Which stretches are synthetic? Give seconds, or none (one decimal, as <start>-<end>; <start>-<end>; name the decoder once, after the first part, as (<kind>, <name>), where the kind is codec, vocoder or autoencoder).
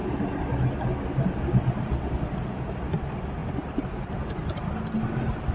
none